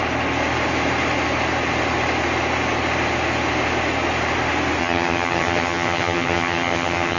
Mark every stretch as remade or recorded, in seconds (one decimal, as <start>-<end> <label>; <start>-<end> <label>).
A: 0.0-4.8 recorded; 4.8-7.2 remade